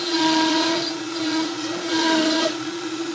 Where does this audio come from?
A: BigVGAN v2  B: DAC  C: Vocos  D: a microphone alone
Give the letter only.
C